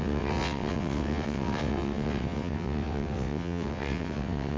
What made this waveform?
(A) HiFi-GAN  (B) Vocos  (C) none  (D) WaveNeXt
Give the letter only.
D